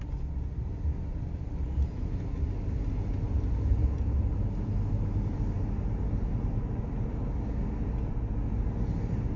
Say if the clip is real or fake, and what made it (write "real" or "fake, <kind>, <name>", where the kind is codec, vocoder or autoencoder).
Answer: real